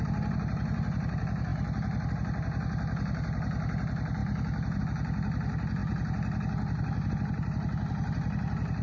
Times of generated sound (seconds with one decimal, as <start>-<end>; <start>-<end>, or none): 4.2-4.8